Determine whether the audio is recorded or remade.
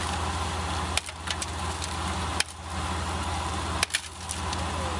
recorded